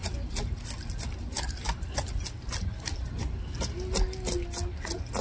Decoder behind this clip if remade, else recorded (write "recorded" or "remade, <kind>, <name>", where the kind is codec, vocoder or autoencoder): recorded